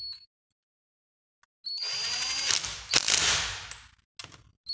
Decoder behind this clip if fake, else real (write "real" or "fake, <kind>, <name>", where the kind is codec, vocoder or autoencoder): real